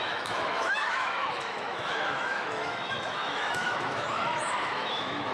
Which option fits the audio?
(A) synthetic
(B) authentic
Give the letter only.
A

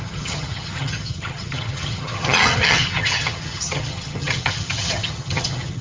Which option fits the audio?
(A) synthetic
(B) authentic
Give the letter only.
A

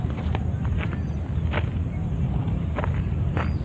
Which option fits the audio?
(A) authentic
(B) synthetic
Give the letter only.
A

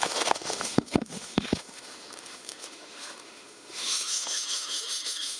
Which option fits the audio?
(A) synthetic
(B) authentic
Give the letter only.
A